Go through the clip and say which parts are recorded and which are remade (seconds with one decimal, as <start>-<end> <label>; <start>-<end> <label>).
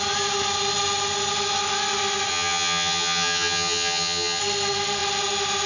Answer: 0.0-2.3 recorded; 2.3-4.4 remade; 4.4-5.7 recorded